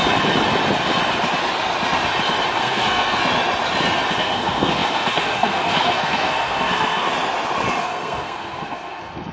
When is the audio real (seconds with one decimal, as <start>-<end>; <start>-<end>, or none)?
0.0-2.6; 3.2-4.2; 7.1-7.8